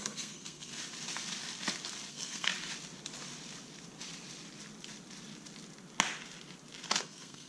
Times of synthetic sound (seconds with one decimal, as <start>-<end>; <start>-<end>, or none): 0.0-0.7; 2.1-2.5; 7.0-7.5